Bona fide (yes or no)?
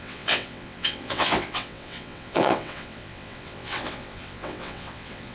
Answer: no